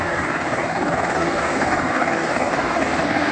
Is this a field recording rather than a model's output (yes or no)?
no